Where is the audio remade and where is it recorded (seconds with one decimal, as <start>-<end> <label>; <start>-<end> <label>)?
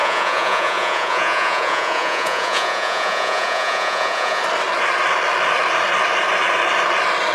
0.0-4.4 remade; 4.4-7.3 recorded